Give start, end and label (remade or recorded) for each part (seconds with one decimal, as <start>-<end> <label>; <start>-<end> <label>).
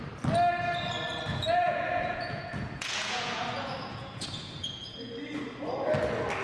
0.0-1.3 recorded; 1.3-5.1 remade; 5.1-6.4 recorded